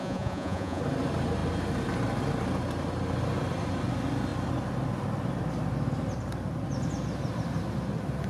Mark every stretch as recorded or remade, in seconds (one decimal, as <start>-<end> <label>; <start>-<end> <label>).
0.0-0.8 remade; 0.8-8.3 recorded